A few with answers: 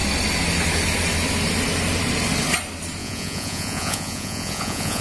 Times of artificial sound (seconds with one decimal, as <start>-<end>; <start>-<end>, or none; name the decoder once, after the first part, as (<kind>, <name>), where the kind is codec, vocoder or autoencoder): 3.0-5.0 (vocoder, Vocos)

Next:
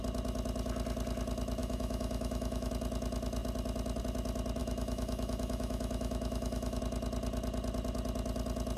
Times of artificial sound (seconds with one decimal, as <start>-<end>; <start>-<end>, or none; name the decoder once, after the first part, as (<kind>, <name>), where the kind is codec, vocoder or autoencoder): 1.6-2.7 (autoencoder, DAC-VAE); 4.6-6.8

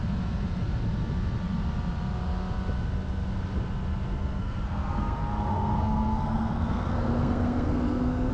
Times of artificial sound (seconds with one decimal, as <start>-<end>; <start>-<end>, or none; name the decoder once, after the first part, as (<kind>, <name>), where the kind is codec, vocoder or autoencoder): 4.4-8.3 (codec, SNAC)

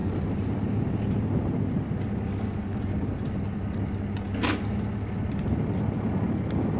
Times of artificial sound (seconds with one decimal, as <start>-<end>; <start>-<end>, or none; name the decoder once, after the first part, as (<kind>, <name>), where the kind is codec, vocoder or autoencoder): none

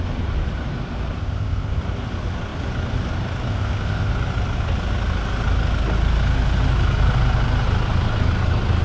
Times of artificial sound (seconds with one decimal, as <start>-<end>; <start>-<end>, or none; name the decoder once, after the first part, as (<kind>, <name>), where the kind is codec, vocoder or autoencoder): 1.2-1.8 (codec, ZipCodec); 3.5-4.1

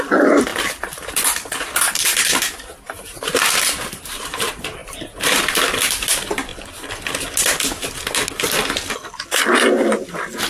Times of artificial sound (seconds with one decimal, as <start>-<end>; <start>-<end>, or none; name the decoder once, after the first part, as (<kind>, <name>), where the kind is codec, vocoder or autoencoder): 0.0-6.5 (vocoder, BigVGAN v2); 9.5-10.5

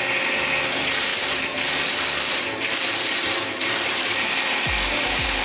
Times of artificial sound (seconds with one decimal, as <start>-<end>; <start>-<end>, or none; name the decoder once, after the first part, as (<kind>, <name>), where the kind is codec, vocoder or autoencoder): 1.1-4.3 (vocoder, BigVGAN v2)

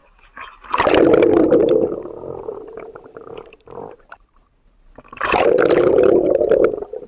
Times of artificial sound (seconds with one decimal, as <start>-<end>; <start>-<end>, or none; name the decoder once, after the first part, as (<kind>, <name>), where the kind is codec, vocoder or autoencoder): 0.0-0.9 (vocoder, BigVGAN v2); 1.6-5.9